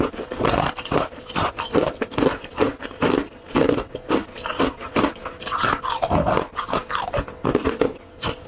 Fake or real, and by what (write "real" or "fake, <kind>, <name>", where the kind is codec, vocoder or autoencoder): fake, vocoder, BigVGAN v2